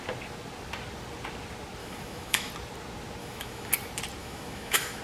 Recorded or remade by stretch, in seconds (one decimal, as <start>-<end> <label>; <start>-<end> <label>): 0.0-1.8 recorded; 1.8-2.5 remade; 2.5-3.2 recorded; 3.2-3.7 remade; 3.7-4.2 recorded; 4.2-5.0 remade